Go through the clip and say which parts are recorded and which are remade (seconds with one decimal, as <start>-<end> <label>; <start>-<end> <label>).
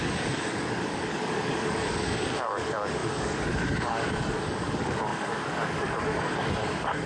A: 0.0-7.1 remade